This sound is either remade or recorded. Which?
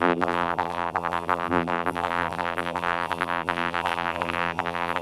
remade